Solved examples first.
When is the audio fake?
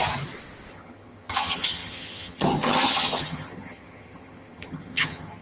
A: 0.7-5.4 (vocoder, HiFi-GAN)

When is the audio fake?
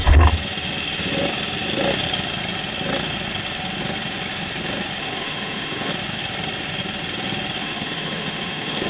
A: 5.0-5.9 (autoencoder, DAC-VAE); 7.6-8.9